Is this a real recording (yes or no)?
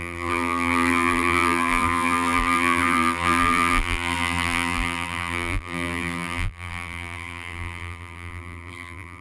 no